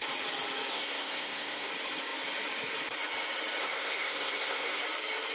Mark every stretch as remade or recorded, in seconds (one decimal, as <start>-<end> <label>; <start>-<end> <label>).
0.0-0.7 recorded; 0.7-1.7 remade; 1.7-3.6 recorded; 3.6-4.8 remade; 4.8-5.3 recorded